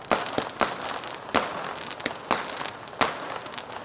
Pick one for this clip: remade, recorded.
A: recorded